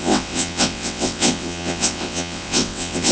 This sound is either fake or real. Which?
fake